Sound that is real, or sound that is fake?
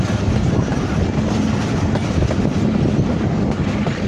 fake